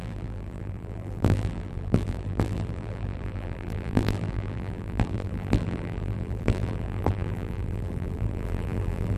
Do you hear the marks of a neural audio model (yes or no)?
yes